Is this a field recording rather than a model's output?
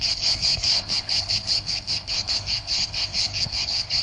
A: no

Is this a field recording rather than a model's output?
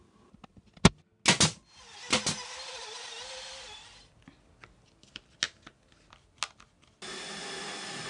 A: yes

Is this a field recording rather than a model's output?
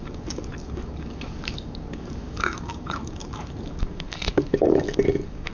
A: no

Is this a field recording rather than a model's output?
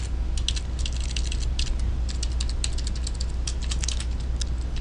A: yes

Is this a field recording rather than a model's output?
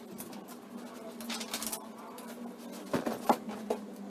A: yes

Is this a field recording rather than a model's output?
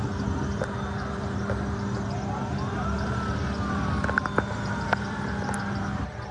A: yes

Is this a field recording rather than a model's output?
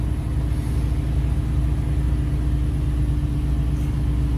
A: yes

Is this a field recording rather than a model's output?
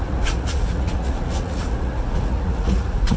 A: no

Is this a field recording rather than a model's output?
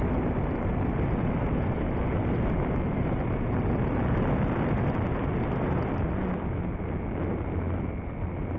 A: yes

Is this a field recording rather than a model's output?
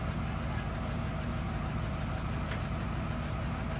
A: yes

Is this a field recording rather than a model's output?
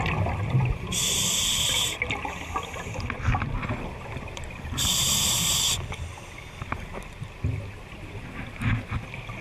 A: yes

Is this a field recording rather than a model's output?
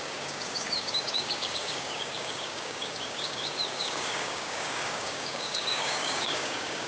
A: no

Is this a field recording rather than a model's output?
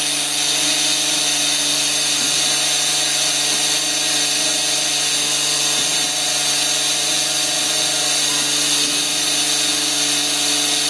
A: yes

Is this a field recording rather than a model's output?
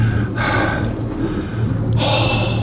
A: yes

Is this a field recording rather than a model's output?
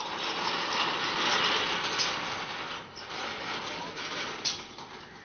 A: yes